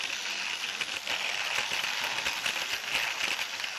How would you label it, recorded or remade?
recorded